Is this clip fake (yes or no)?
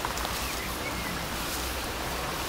no